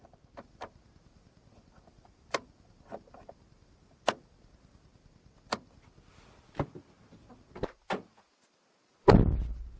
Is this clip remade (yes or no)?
no